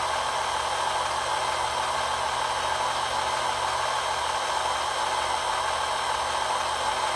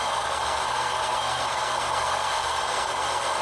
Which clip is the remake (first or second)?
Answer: second